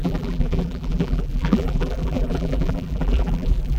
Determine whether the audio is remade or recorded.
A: remade